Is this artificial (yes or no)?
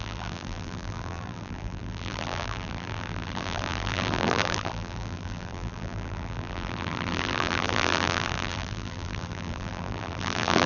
yes